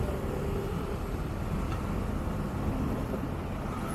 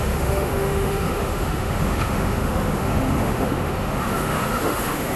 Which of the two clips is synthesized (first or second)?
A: second